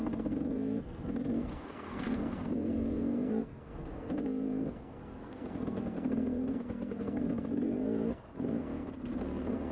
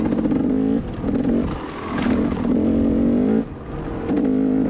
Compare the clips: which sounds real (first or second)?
second